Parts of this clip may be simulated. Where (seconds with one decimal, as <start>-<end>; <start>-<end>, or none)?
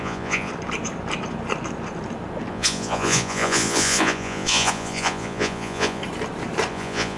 0.0-0.5; 2.5-6.0; 6.7-7.2